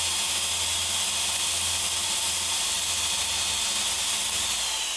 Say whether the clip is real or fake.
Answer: real